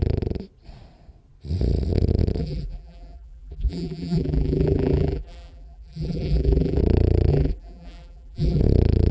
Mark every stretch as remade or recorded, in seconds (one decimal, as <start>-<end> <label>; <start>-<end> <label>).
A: 0.0-2.4 recorded; 2.4-6.8 remade; 6.8-7.3 recorded; 7.3-8.6 remade; 8.6-9.1 recorded